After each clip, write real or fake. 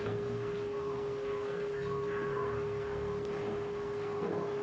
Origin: fake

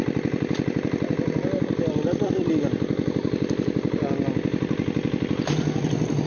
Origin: real